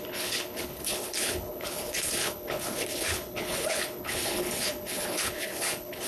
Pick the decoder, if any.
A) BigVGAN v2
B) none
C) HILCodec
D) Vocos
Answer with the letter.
C